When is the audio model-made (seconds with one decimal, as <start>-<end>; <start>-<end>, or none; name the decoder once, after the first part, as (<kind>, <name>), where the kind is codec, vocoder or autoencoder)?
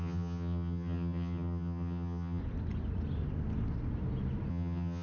0.0-2.4 (vocoder, HiFi-GAN); 4.5-5.0